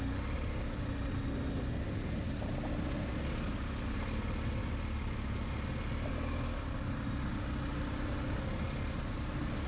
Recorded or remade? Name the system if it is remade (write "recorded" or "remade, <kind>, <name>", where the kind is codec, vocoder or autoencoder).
recorded